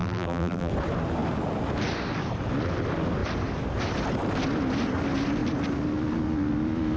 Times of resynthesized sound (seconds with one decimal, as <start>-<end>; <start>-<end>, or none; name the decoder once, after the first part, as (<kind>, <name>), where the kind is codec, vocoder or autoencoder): 0.0-0.7 (vocoder, BigVGAN v2)